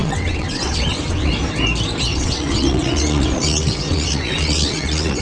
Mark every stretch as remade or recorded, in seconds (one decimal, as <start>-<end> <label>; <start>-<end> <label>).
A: 0.0-1.3 remade; 1.3-2.1 recorded; 2.1-5.2 remade